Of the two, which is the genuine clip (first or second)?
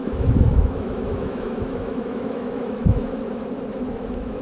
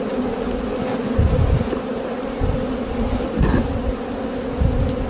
second